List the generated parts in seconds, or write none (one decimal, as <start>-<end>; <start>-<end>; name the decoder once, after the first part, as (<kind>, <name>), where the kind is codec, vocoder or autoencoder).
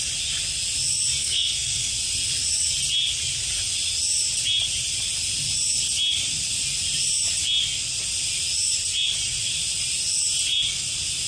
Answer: 1.2-1.9 (codec, SNAC)